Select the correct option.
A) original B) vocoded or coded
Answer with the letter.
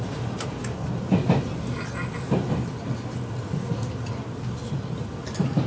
A